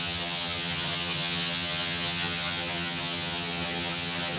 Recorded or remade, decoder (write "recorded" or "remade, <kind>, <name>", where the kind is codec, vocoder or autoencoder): remade, vocoder, HiFi-GAN